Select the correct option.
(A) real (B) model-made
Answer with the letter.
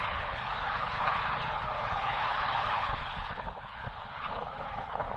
B